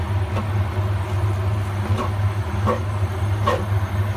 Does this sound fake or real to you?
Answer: real